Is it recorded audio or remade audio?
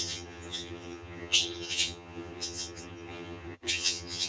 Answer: remade